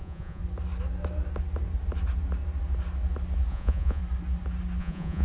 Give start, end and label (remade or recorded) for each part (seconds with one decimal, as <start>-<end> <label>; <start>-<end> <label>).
0.0-0.4 remade; 0.4-3.5 recorded; 3.5-4.0 remade; 4.0-4.8 recorded; 4.8-5.2 remade